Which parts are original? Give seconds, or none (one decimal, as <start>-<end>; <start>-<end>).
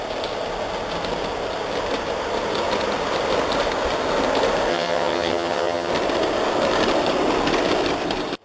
0.0-4.7; 5.9-8.4